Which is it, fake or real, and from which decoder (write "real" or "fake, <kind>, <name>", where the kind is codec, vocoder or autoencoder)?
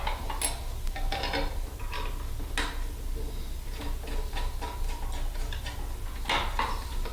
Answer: real